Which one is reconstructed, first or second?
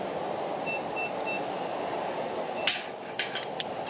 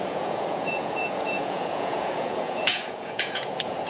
second